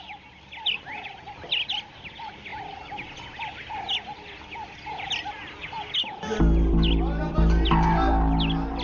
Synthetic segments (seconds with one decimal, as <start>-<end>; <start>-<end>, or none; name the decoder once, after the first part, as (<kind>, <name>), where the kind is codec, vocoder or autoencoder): none